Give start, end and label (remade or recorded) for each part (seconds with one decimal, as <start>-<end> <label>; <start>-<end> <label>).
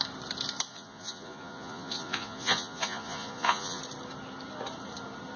0.0-0.7 recorded; 0.7-3.8 remade; 3.8-5.4 recorded